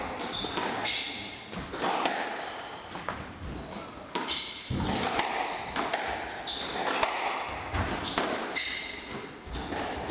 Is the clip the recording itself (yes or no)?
yes